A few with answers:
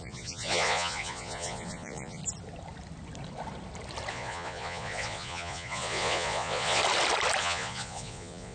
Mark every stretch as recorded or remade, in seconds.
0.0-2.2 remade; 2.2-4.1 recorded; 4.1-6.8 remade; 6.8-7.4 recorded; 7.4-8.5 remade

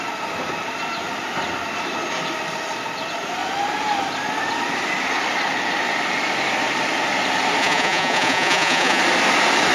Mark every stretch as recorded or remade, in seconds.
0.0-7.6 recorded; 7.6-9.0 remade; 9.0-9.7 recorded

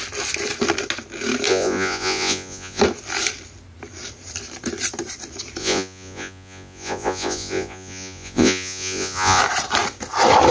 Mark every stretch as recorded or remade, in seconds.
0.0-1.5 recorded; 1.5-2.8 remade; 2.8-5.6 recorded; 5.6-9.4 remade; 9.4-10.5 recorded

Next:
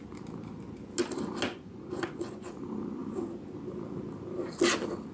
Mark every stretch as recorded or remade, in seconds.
0.0-1.5 recorded; 1.5-2.5 remade; 2.5-5.1 recorded

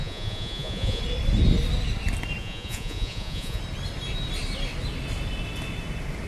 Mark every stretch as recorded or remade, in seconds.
0.0-1.0 remade; 1.0-2.4 recorded; 2.4-3.6 remade; 3.6-6.3 recorded

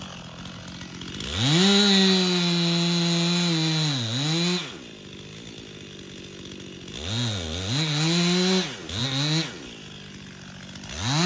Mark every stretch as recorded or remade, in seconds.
0.0-11.3 recorded